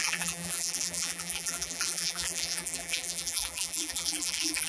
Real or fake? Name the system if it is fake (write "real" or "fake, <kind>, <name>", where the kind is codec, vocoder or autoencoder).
fake, vocoder, BigVGAN v2